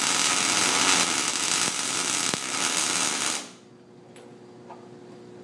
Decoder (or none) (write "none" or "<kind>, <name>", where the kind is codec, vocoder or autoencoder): none